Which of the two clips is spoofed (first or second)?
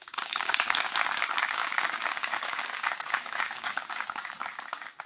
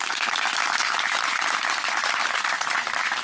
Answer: first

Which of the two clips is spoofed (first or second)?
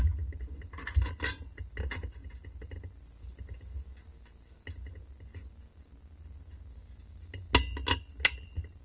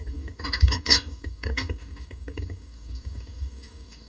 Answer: second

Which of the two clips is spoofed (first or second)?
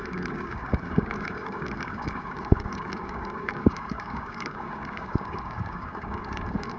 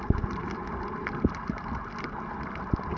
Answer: first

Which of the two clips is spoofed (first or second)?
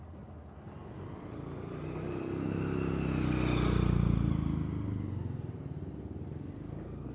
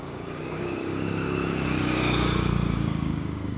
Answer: second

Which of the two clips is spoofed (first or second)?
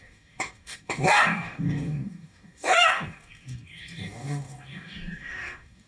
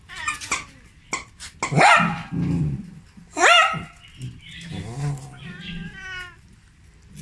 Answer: first